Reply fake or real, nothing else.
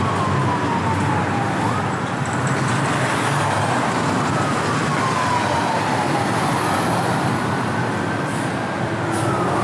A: real